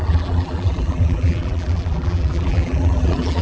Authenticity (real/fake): fake